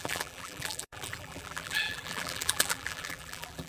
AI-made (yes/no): yes